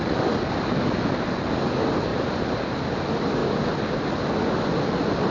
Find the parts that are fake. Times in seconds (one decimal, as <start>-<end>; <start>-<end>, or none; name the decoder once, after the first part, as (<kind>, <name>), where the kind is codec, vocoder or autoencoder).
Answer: none